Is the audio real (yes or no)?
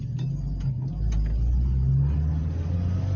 yes